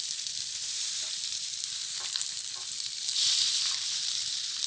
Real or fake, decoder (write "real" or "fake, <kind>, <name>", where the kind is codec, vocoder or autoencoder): fake, vocoder, BigVGAN v2